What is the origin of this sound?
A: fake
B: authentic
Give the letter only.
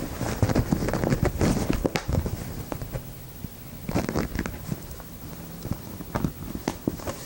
B